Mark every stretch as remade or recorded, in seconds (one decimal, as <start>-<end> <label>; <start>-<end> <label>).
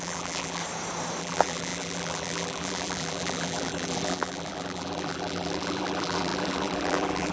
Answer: 0.0-0.6 remade; 0.6-1.2 recorded; 1.2-7.3 remade